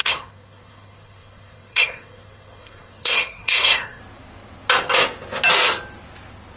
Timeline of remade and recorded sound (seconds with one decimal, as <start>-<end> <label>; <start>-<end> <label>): 0.0-4.0 remade; 4.0-6.6 recorded